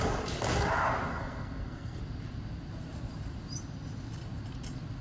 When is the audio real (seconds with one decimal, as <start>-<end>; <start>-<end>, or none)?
0.0-1.1; 2.0-5.0